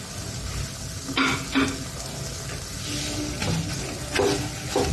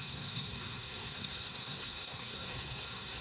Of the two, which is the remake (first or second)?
second